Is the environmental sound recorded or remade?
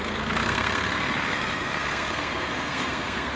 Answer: remade